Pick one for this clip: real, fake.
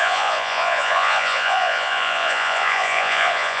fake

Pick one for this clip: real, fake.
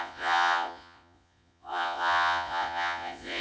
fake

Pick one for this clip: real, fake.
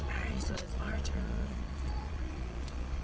fake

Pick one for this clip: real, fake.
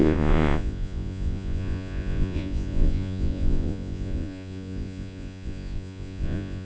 fake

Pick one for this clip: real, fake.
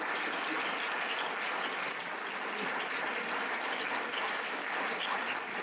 real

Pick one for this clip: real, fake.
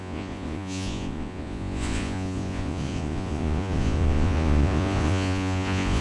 fake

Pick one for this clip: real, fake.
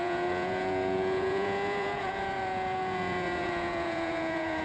fake